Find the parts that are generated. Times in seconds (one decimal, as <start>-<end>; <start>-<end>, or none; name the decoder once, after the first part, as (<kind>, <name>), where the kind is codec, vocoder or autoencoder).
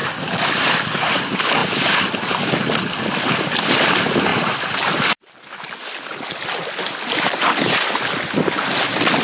none